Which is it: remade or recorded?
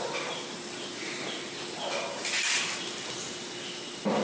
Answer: recorded